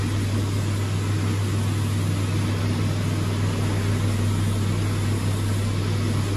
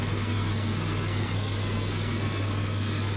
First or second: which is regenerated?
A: second